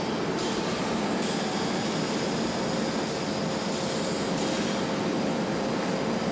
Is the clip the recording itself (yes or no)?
yes